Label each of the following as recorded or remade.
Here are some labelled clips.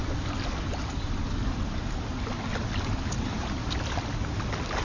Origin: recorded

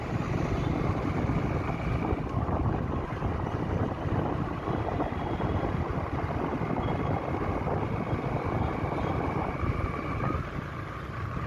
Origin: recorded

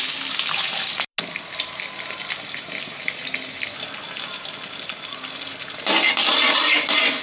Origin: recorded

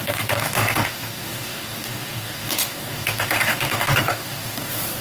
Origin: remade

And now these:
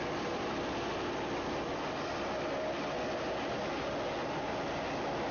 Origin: recorded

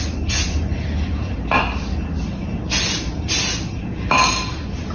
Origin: recorded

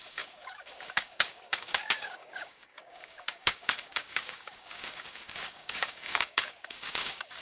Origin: remade